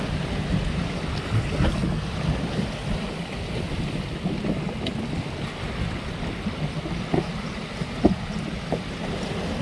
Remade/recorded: recorded